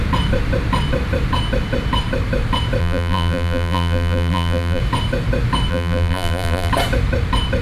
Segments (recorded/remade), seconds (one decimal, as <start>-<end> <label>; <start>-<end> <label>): 0.0-2.8 recorded; 2.8-4.8 remade; 4.8-5.7 recorded; 5.7-6.7 remade; 6.7-7.6 recorded